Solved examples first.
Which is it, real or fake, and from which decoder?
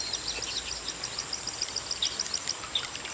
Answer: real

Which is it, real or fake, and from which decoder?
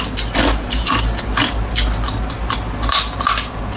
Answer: real